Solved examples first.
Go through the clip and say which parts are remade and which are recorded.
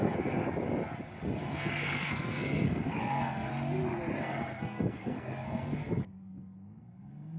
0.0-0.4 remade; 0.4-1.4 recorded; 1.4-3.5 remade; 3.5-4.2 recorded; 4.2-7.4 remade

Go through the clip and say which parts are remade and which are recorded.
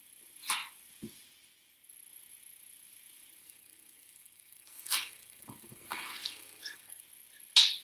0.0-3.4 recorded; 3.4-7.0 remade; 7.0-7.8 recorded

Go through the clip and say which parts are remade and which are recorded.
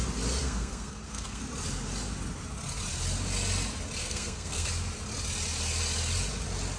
0.0-0.4 recorded; 0.4-1.4 remade; 1.4-4.0 recorded; 4.0-4.7 remade; 4.7-6.8 recorded